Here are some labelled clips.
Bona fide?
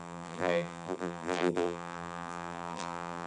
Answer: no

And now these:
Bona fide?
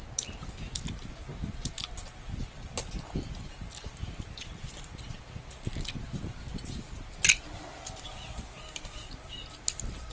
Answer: yes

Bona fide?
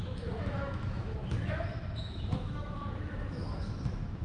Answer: no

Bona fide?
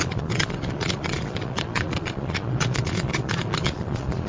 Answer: no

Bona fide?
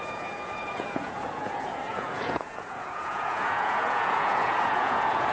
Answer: no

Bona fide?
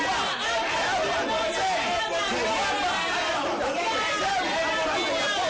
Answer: yes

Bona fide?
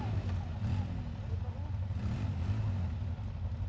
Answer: yes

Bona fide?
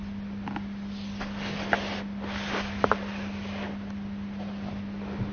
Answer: yes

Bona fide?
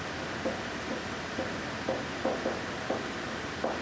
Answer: yes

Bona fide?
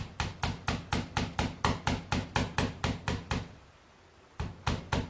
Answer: yes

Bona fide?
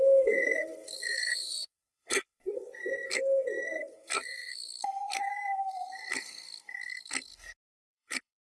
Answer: no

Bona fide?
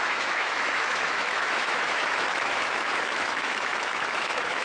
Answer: no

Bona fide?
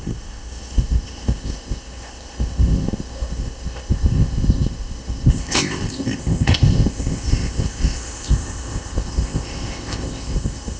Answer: no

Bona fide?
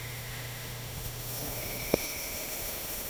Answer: no